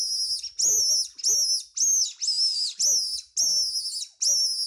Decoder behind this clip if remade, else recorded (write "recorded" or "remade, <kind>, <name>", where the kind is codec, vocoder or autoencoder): recorded